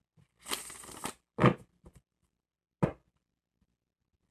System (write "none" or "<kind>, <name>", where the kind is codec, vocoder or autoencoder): none